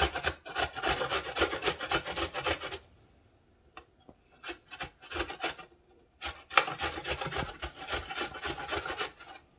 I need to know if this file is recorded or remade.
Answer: recorded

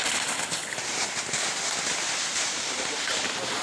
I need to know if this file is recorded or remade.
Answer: recorded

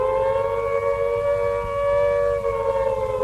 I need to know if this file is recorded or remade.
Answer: recorded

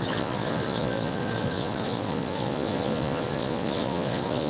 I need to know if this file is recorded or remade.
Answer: remade